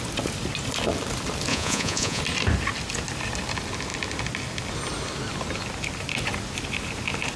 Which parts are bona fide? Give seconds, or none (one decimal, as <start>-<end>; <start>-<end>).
0.0-1.5; 2.2-7.4